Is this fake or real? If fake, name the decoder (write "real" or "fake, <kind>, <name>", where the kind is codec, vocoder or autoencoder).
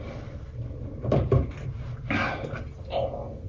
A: real